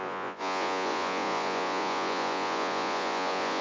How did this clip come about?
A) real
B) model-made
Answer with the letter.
B